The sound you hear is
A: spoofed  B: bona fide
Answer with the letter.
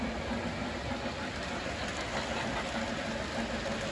B